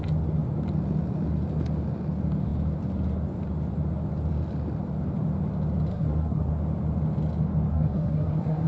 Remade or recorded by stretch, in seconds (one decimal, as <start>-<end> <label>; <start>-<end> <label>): 0.0-5.9 recorded; 5.9-6.5 remade; 6.5-7.7 recorded; 7.7-8.7 remade